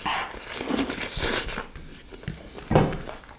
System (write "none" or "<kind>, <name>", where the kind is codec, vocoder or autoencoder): none